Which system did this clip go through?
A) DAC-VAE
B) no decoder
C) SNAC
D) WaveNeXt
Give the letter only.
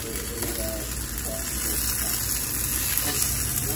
B